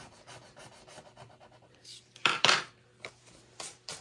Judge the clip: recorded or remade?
remade